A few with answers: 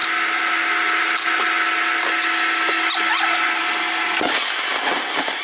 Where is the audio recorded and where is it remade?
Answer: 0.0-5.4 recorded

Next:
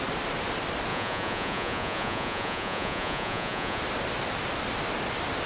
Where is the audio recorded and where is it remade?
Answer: 0.0-0.9 recorded; 0.9-3.8 remade; 3.8-5.5 recorded

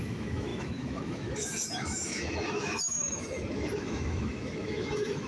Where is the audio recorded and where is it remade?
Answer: 0.0-5.3 remade

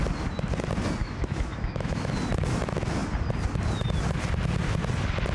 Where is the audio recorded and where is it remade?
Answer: 0.0-1.0 recorded; 1.0-2.1 remade; 2.1-5.3 recorded

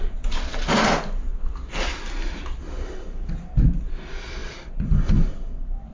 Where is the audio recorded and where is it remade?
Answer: 0.0-5.9 recorded